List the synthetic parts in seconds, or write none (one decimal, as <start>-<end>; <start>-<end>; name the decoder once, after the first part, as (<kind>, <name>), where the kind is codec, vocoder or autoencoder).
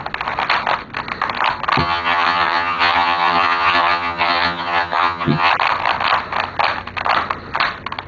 1.8-5.5 (vocoder, HiFi-GAN)